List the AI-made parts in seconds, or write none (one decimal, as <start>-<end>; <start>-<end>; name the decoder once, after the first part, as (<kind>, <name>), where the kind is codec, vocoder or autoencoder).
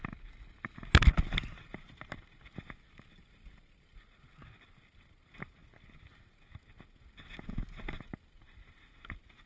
none